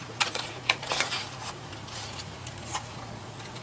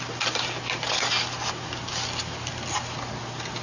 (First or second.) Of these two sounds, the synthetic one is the first